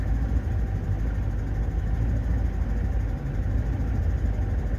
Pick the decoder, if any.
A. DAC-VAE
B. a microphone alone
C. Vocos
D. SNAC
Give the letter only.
B